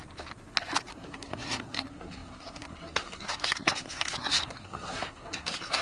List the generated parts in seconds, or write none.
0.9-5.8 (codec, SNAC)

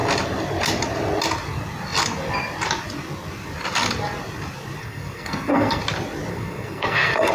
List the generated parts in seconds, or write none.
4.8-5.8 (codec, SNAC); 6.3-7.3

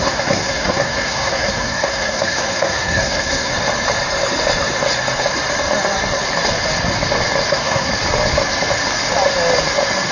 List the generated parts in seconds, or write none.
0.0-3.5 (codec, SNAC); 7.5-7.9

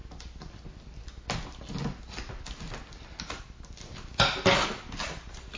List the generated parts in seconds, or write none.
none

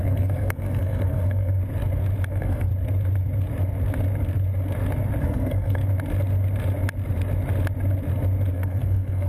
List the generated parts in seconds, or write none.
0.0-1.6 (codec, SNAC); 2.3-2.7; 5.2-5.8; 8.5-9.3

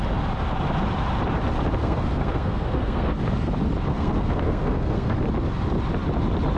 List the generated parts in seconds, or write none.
1.8-3.2 (codec, SNAC); 3.9-5.2

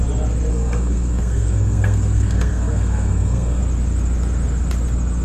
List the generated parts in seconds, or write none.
0.5-3.6 (codec, SNAC)